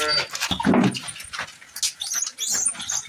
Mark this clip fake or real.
real